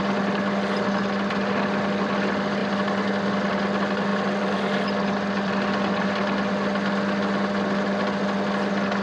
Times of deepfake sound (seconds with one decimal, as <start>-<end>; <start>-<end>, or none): none